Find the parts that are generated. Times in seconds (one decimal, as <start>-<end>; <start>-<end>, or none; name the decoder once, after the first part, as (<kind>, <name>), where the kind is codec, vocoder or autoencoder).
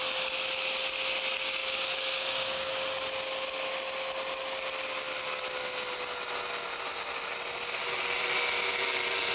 1.6-2.7 (codec, DAC)